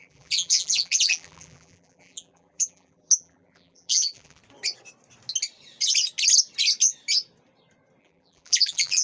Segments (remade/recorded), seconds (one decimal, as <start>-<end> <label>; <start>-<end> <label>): 0.0-4.4 remade; 4.4-8.0 recorded; 8.0-9.0 remade